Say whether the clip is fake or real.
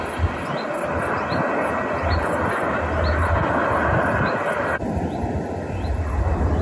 real